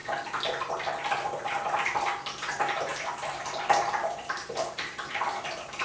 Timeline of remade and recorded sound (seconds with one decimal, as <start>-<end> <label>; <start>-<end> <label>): 0.0-2.9 recorded; 2.9-5.1 remade; 5.1-5.8 recorded